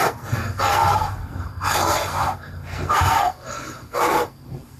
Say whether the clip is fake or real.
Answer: fake